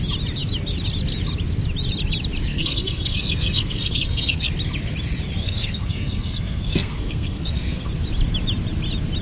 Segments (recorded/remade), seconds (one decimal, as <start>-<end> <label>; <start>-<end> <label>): 0.0-2.5 recorded; 2.5-4.5 remade; 4.5-5.4 recorded; 5.4-7.9 remade; 7.9-9.2 recorded